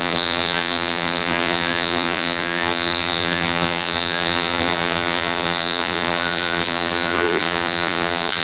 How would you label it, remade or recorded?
remade